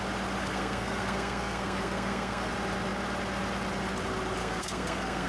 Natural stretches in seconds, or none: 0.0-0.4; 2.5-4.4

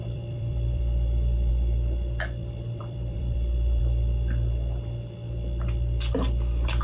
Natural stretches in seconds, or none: 1.5-2.4; 3.8-6.8

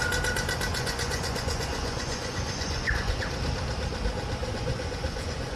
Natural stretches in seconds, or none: 0.0-0.7; 3.2-4.4

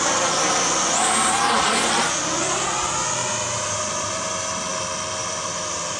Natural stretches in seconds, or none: 0.0-3.2; 4.1-5.2

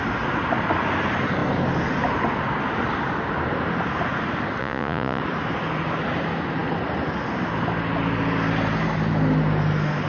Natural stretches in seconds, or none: 0.0-4.6; 5.2-10.1

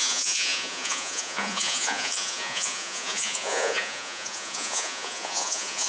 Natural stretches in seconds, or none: none

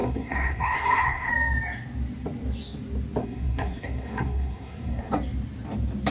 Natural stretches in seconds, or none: 1.3-3.2; 5.1-6.1

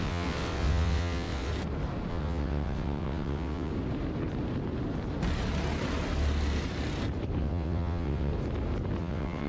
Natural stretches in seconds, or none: 1.5-2.1; 3.7-7.4; 8.3-9.0